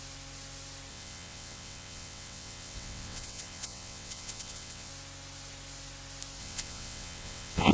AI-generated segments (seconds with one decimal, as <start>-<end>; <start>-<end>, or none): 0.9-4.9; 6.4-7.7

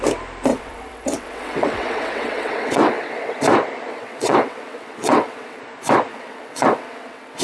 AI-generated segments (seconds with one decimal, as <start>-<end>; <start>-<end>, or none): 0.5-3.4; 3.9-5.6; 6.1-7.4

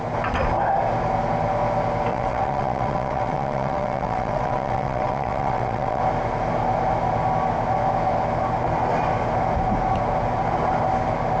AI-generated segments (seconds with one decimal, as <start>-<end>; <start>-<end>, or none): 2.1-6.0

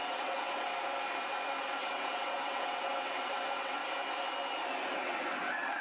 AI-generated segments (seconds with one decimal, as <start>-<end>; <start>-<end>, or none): 0.0-0.7; 1.8-3.8; 4.9-5.8

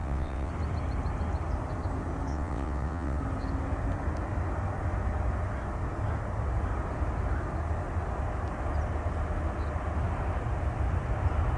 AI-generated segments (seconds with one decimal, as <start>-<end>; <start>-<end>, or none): 0.0-0.5; 2.3-3.2

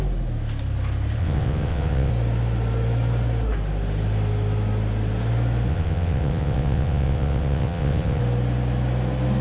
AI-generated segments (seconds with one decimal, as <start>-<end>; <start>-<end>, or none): 1.2-2.1; 5.7-8.2

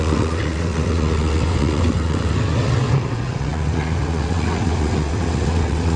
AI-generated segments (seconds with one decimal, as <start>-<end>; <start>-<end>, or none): 0.0-6.0

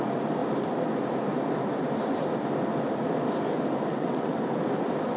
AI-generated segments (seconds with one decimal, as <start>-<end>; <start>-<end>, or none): 3.9-4.4